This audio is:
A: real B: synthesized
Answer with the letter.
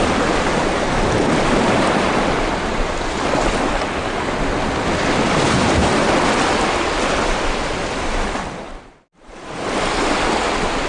A